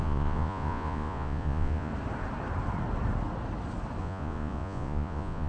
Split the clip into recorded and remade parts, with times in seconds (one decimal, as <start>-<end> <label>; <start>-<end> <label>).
0.0-1.9 remade; 1.9-4.0 recorded; 4.0-5.5 remade